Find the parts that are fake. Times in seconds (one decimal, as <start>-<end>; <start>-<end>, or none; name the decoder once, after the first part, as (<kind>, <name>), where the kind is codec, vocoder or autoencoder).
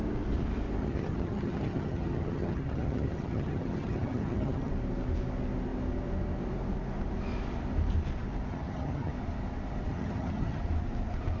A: 0.8-4.7 (vocoder, HiFi-GAN); 8.5-9.1; 9.9-10.6